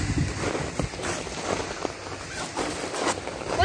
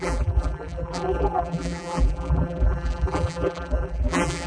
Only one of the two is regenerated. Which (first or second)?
second